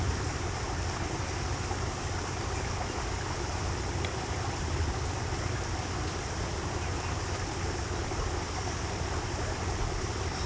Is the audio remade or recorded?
recorded